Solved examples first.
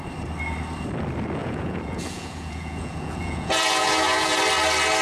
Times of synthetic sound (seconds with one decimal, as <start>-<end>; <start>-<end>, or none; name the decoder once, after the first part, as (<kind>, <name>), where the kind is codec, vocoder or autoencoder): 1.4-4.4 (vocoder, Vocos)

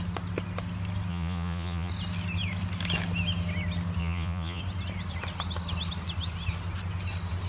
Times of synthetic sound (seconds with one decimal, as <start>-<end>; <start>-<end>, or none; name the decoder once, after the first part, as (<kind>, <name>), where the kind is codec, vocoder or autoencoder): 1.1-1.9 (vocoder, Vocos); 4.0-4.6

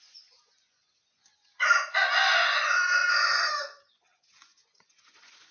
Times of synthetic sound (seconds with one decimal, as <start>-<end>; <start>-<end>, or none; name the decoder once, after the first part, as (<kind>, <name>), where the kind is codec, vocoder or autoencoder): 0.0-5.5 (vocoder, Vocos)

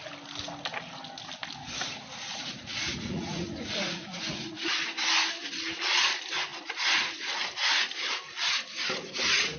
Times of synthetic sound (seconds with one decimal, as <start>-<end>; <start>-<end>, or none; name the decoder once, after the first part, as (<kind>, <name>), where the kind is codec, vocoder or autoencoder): 2.3-4.7 (vocoder, Vocos)